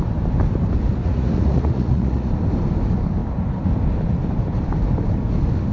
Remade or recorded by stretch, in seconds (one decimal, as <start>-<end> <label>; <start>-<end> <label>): 0.0-1.0 recorded; 1.0-2.3 remade; 2.3-5.7 recorded